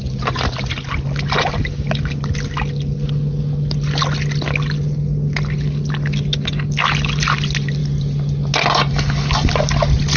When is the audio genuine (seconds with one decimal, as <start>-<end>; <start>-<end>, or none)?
0.0-10.2